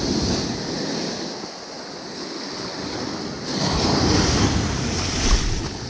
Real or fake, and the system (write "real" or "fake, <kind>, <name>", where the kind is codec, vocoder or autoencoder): real